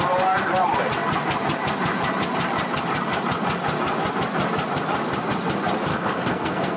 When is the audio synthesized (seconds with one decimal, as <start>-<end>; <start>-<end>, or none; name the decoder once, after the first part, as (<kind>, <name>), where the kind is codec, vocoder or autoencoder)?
5.9-6.8 (codec, SNAC)

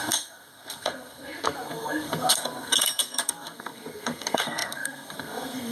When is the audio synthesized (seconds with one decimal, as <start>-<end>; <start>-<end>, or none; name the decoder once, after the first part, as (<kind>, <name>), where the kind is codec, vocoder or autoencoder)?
0.0-5.7 (codec, SNAC)

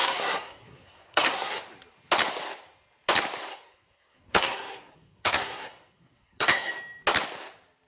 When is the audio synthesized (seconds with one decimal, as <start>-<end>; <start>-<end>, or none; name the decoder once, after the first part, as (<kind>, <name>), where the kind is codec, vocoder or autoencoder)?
0.0-1.6 (codec, SNAC); 3.5-6.7